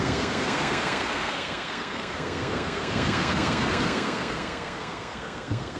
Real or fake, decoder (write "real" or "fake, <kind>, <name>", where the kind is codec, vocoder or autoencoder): fake, codec, SNAC